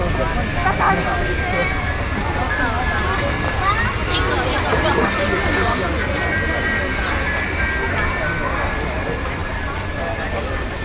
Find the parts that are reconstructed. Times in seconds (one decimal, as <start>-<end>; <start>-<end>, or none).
none